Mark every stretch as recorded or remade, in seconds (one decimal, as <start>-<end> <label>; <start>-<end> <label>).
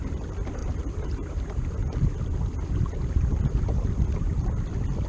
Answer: 0.0-0.6 recorded; 0.6-1.6 remade; 1.6-5.1 recorded